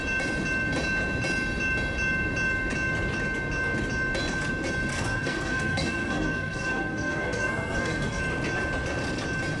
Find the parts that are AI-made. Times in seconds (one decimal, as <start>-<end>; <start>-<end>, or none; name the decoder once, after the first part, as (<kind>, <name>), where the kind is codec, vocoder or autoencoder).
4.9-8.2 (codec, SNAC)